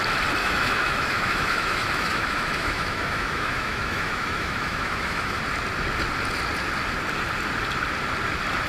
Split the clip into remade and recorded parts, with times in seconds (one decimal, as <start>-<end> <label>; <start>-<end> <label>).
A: 0.0-0.4 recorded; 0.4-5.4 remade; 5.4-8.7 recorded